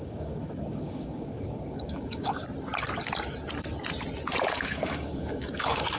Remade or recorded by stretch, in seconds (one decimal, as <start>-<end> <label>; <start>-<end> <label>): 0.0-2.4 remade; 2.4-4.5 recorded; 4.5-6.0 remade